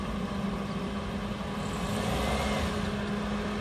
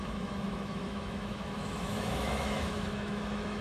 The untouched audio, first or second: first